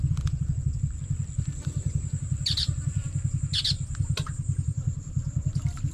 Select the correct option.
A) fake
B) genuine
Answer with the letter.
B